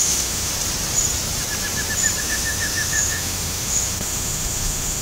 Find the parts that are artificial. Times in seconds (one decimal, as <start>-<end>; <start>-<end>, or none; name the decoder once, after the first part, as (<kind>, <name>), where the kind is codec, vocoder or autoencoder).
0.0-0.5 (autoencoder, DAC-VAE); 2.2-5.0